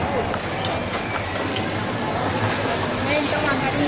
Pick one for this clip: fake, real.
real